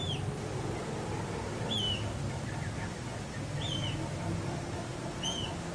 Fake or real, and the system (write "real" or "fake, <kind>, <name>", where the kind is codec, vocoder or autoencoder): real